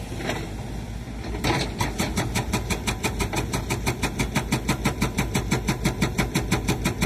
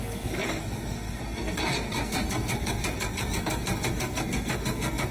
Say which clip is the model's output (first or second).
second